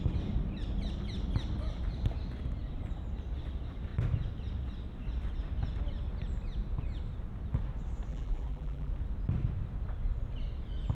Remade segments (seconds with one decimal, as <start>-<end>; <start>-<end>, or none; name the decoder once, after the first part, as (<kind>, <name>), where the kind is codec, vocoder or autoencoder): 8.1-8.9 (vocoder, BigVGAN v2)